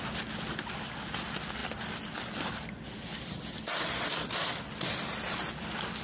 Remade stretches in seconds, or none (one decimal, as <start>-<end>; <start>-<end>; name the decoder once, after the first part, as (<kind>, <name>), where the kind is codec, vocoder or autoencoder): 1.6-5.2 (vocoder, BigVGAN v2)